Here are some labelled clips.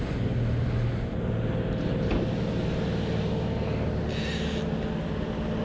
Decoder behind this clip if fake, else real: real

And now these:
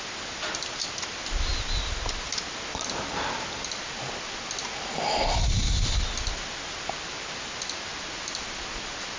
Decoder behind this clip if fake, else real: real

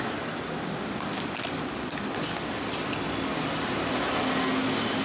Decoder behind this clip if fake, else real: real